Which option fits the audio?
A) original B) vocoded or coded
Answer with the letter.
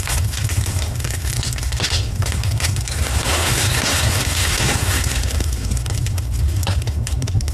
B